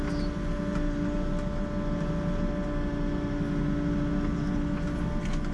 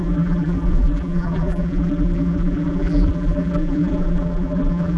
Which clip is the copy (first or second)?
second